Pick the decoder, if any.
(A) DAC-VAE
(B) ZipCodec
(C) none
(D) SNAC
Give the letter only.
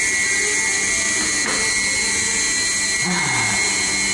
C